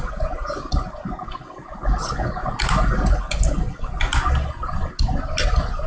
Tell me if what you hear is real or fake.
real